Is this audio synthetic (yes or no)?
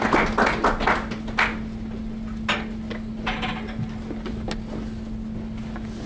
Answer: no